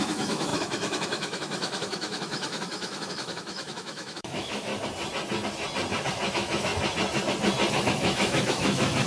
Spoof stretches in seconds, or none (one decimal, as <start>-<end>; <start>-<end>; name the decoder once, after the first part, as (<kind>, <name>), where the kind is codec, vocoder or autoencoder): 0.0-4.7 (autoencoder, DAC-VAE); 6.3-6.7; 7.7-9.1

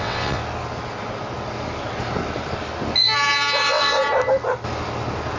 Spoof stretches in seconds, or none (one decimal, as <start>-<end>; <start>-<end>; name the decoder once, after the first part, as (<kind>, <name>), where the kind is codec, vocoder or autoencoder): 0.0-0.4 (vocoder, WaveNeXt); 3.6-4.0